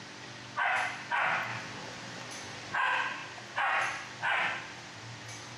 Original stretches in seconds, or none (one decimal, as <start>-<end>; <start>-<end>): 0.0-5.6